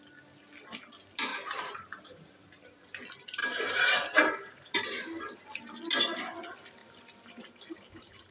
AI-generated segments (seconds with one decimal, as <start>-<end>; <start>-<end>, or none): 1.3-3.0; 3.4-5.2; 6.8-8.3